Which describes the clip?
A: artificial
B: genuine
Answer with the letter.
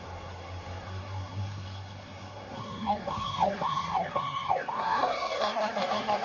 A